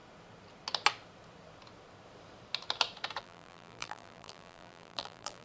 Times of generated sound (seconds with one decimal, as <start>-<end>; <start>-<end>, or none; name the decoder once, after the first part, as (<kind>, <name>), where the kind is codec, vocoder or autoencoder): 3.2-5.4 (vocoder, BigVGAN v2)